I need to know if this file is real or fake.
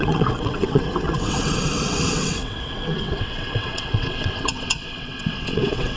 fake